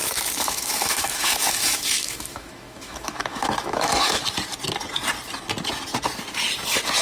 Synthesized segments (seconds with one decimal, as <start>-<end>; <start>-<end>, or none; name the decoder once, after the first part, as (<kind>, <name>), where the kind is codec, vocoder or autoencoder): 0.0-4.2 (autoencoder, DAC-VAE)